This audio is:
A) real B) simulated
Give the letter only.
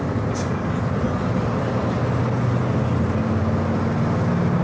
A